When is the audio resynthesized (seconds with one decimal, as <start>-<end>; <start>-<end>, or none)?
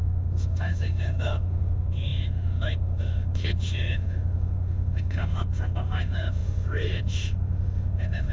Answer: 0.0-8.3